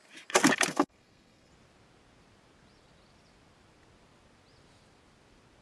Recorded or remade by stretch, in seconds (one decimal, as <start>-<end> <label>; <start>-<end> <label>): 0.0-0.7 recorded; 0.7-1.5 remade; 1.5-5.6 recorded

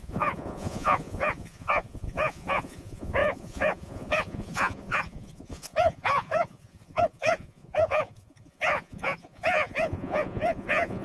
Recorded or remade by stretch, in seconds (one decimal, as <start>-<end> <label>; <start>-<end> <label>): 0.0-11.0 remade

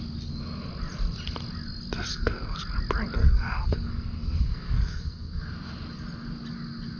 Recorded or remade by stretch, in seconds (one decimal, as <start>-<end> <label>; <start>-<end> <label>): 0.0-2.1 recorded; 2.1-2.6 remade; 2.6-3.2 recorded; 3.2-5.4 remade; 5.4-7.0 recorded

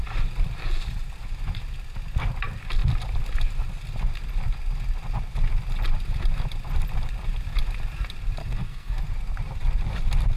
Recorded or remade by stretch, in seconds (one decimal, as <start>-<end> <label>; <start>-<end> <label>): 0.0-8.4 recorded; 8.4-9.0 remade; 9.0-10.4 recorded

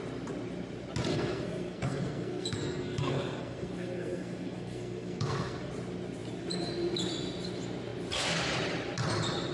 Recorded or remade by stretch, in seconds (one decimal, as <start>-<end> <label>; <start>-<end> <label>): 0.0-1.1 recorded; 1.1-5.7 remade; 5.7-9.5 recorded

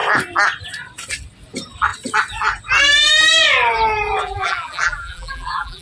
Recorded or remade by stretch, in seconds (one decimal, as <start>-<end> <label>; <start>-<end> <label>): 0.0-4.2 recorded; 4.2-5.8 remade